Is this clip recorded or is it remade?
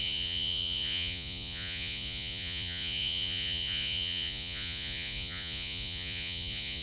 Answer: remade